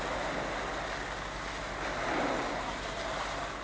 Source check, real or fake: real